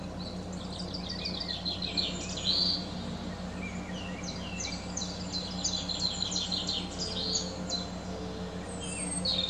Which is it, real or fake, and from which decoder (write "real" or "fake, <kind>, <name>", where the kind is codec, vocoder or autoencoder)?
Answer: real